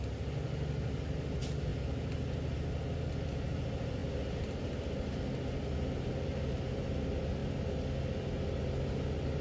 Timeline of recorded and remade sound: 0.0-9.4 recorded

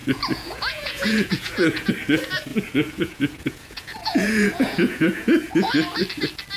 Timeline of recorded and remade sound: 0.0-1.9 remade; 1.9-2.5 recorded; 2.5-5.7 remade; 5.7-6.6 recorded

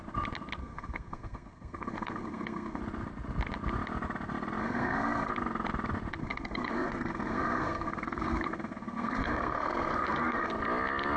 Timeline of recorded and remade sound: 0.0-0.6 recorded; 0.6-2.8 remade; 2.8-4.6 recorded; 4.6-5.3 remade; 5.3-6.2 recorded; 6.2-10.5 remade; 10.5-11.2 recorded

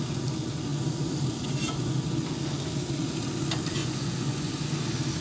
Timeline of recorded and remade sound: 0.0-3.8 recorded; 3.8-4.5 remade; 4.5-5.2 recorded